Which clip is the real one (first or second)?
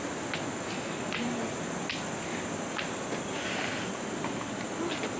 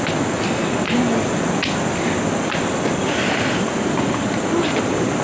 first